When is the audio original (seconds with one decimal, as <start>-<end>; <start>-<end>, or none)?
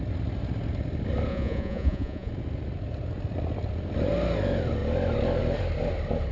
0.0-1.3; 2.3-6.3